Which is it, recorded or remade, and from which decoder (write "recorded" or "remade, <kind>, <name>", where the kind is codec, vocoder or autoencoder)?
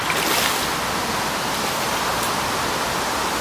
recorded